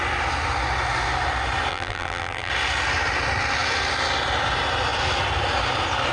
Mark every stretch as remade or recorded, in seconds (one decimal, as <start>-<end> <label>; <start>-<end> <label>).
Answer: 0.0-1.7 recorded; 1.7-2.5 remade; 2.5-6.1 recorded